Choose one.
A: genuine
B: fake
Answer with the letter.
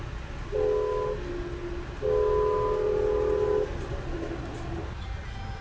A